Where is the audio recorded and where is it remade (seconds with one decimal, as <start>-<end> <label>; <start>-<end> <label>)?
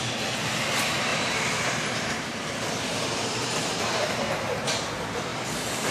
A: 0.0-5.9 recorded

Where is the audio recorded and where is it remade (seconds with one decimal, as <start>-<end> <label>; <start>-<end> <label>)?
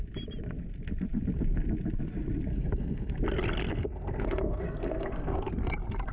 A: 0.0-2.5 recorded; 2.5-3.1 remade; 3.1-3.6 recorded; 3.6-5.5 remade; 5.5-6.1 recorded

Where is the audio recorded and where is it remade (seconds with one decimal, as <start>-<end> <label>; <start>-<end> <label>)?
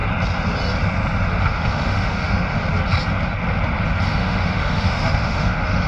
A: 0.0-1.4 recorded; 1.4-2.6 remade; 2.6-4.1 recorded; 4.1-5.9 remade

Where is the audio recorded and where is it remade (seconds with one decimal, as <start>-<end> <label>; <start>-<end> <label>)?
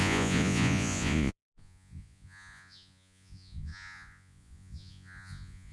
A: 0.0-5.7 remade